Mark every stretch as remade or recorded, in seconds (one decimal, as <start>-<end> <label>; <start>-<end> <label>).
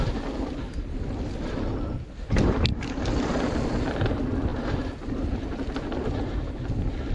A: 0.0-7.1 recorded